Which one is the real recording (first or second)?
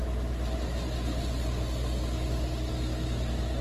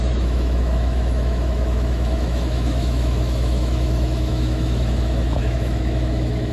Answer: first